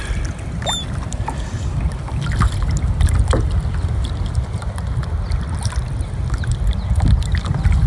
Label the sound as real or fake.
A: real